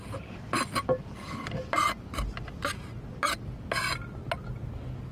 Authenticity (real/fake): real